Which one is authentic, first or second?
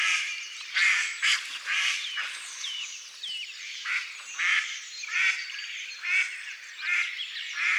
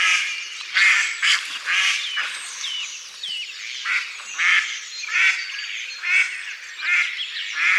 second